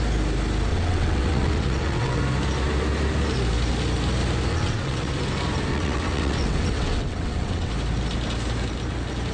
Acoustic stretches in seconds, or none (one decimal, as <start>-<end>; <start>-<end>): 0.0-0.7; 2.2-4.5; 5.1-5.7; 7.7-9.3